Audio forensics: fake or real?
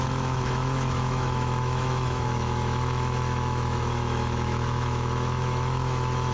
fake